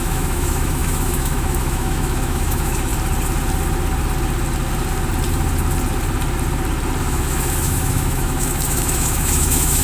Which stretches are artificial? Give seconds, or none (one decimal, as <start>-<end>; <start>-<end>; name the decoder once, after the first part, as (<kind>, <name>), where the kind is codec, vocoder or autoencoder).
0.0-2.9 (autoencoder, DAC-VAE); 7.0-9.8